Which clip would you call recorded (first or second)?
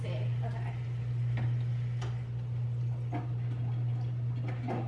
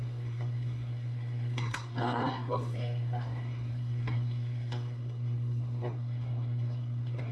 first